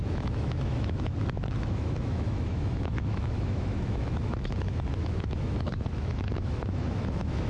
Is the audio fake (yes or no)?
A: yes